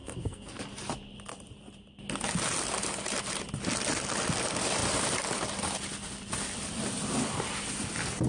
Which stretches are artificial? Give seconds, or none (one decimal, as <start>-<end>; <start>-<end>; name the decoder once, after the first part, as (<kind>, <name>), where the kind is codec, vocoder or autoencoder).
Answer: 0.0-0.6 (codec, SNAC)